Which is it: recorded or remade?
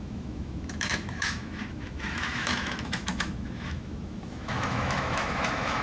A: remade